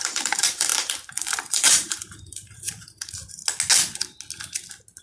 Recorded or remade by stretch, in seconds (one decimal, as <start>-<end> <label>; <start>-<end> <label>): 0.0-3.4 remade; 3.4-5.0 recorded